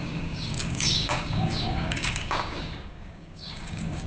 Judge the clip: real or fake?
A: fake